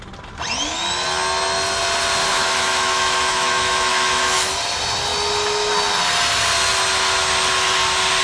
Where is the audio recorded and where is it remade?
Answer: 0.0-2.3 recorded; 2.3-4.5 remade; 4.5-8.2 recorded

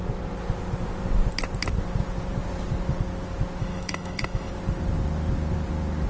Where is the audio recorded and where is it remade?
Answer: 0.0-3.6 recorded; 3.6-4.5 remade; 4.5-6.1 recorded

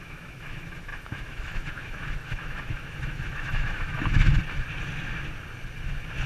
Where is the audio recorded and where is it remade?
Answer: 0.0-4.3 remade; 4.3-6.3 recorded